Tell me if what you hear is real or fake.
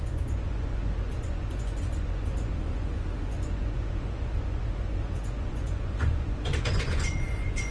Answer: fake